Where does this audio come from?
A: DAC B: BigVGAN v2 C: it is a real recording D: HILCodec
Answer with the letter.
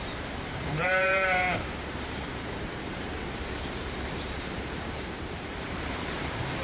B